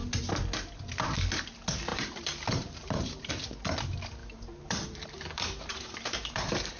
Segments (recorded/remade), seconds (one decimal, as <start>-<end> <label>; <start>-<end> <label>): 0.0-1.9 recorded; 1.9-3.3 remade; 3.3-4.2 recorded; 4.2-6.8 remade